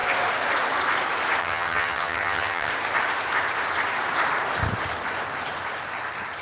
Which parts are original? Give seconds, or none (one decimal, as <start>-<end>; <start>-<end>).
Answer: 0.0-1.4; 2.7-6.4